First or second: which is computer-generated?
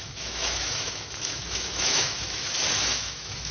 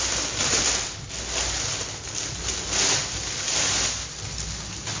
first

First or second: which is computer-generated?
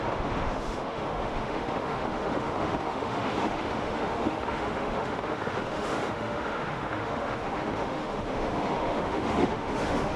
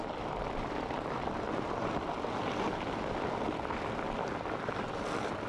first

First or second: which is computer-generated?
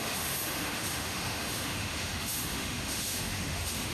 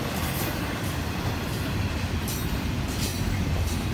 first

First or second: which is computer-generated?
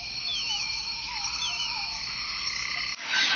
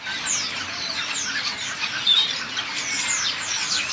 first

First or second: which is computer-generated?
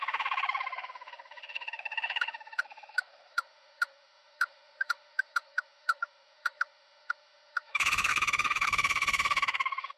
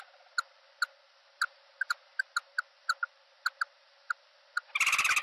first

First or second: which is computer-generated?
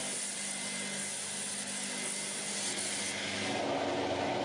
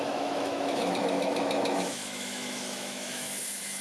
second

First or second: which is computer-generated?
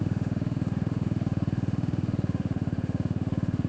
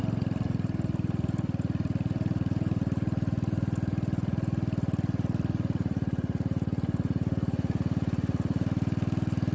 first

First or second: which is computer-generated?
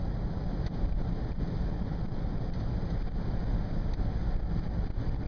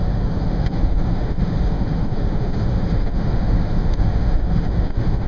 second